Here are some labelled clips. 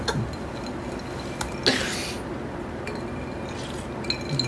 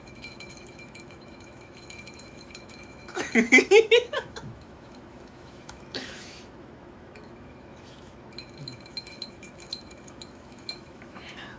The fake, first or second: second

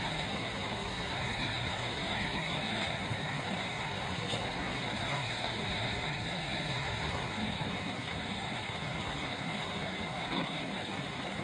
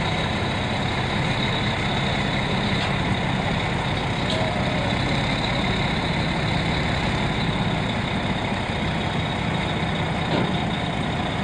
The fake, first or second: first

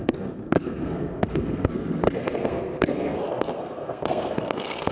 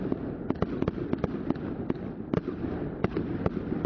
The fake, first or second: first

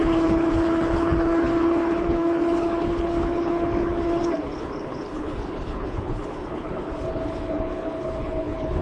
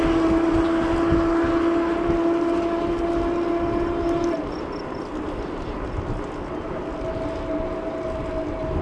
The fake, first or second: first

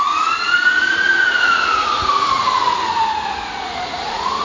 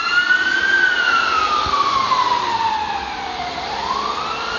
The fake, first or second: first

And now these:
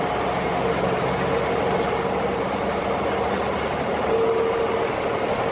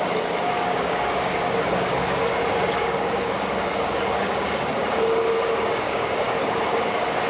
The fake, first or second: second